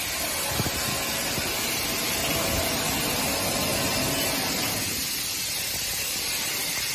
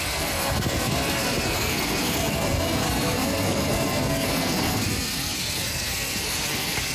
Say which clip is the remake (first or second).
second